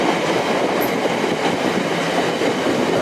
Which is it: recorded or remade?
recorded